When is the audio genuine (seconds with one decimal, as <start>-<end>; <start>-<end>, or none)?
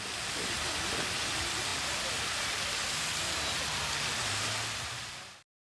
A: 0.0-5.6